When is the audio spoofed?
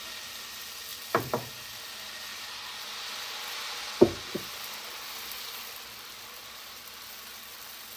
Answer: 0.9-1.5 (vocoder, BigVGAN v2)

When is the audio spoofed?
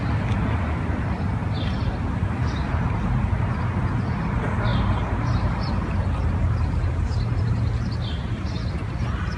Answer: 1.4-3.4 (vocoder, BigVGAN v2)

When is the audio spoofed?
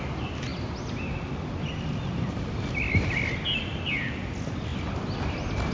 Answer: none